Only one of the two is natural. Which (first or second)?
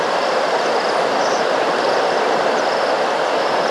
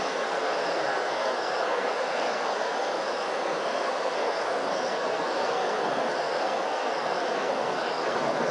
first